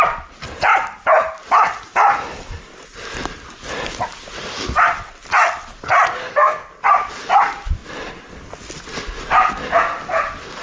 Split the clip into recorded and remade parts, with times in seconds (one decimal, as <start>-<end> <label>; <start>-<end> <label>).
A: 0.0-6.1 recorded; 6.1-6.7 remade; 6.7-10.6 recorded